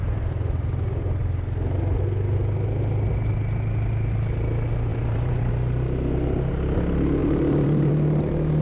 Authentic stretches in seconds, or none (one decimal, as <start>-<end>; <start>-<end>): 0.0-4.9; 5.5-7.2; 7.9-8.6